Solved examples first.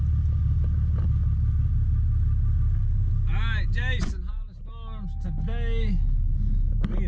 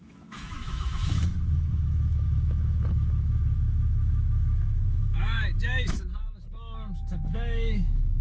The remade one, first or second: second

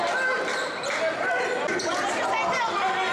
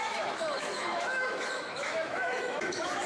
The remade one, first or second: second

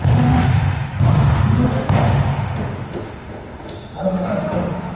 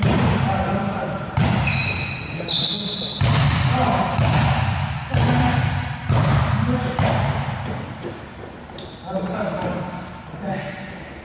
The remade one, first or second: first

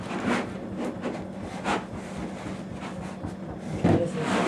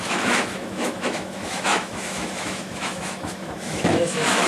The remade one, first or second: second